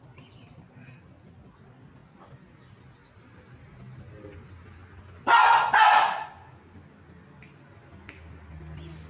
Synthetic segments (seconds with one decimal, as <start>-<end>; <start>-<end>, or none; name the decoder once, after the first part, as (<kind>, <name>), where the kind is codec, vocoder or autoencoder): none